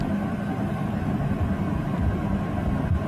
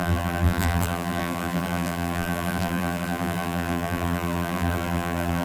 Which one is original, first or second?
first